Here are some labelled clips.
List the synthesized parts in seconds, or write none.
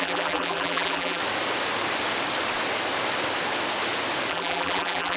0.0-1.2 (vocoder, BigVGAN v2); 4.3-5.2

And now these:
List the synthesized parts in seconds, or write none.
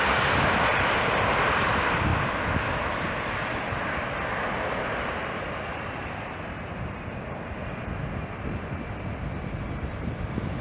none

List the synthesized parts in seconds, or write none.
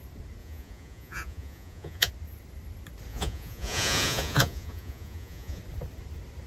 0.4-2.1 (vocoder, Vocos); 3.1-5.6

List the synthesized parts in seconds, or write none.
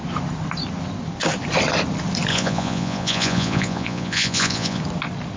2.3-4.8 (vocoder, Vocos)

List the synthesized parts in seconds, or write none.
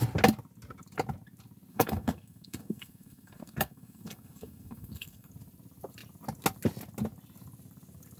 1.7-5.3 (codec, SNAC)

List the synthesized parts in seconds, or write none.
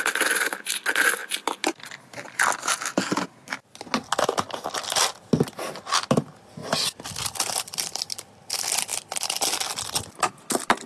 6.6-8.0 (vocoder, BigVGAN v2)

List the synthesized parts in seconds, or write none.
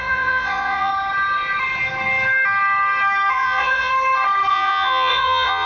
0.0-0.9 (vocoder, Vocos); 3.3-3.9; 4.5-5.7